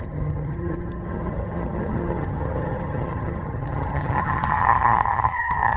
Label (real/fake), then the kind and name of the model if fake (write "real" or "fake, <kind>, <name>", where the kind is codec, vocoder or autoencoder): fake, vocoder, HiFi-GAN